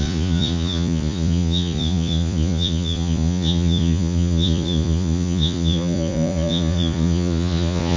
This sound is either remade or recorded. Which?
remade